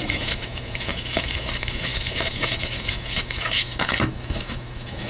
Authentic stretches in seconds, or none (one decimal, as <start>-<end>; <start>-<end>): none